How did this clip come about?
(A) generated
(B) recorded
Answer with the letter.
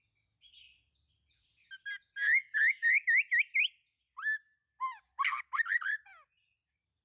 B